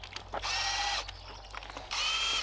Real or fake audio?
real